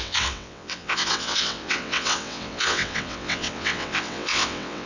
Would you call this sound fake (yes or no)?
yes